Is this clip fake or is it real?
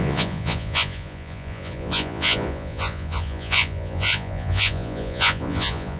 fake